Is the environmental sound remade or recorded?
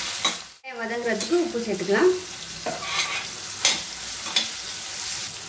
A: recorded